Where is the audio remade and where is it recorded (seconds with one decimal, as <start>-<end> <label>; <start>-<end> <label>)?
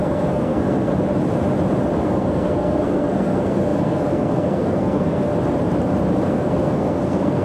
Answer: 0.0-0.9 remade; 0.9-2.0 recorded; 2.0-5.3 remade; 5.3-6.1 recorded; 6.1-7.4 remade